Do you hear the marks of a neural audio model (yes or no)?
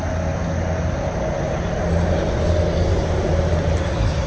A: no